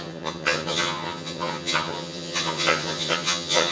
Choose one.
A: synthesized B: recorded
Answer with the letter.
A